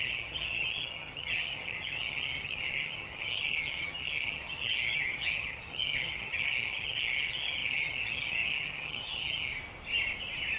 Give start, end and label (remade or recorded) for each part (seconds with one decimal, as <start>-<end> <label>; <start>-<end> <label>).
0.0-9.5 remade; 9.5-10.6 recorded